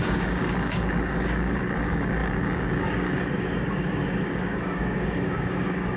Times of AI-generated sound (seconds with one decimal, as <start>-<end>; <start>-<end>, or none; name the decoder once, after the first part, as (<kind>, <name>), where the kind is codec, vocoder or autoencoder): 0.0-6.0 (codec, DAC)